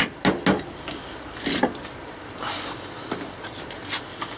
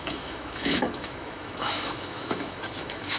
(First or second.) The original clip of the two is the first